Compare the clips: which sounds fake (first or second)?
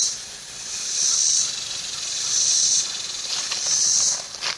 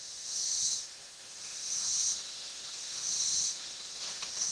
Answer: second